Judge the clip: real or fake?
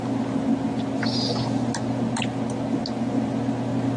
real